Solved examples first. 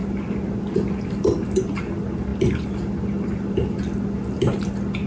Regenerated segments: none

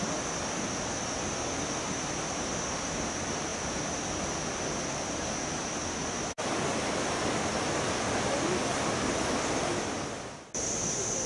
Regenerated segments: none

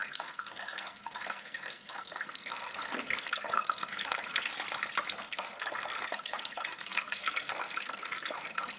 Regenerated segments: 0.0-4.5 (codec, SNAC); 5.1-8.8

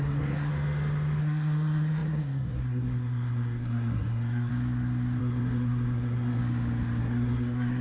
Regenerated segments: 0.0-0.5 (codec, SNAC); 1.2-4.5; 5.2-6.4; 7.0-7.8

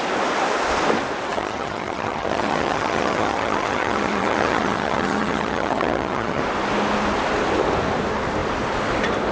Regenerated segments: 1.3-6.4 (vocoder, HiFi-GAN)